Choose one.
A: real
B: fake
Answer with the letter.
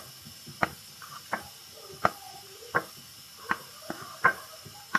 A